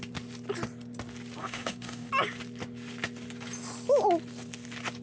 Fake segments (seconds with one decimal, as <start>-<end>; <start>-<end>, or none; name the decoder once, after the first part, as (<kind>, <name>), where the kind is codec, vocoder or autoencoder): 1.4-2.1 (codec, DAC)

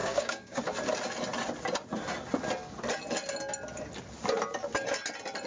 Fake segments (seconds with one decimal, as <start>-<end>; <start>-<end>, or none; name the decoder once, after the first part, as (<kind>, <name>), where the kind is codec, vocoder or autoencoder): 0.0-0.6 (codec, DAC)

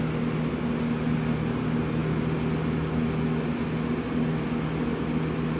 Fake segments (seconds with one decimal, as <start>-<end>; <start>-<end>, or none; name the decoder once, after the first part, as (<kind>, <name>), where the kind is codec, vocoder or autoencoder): none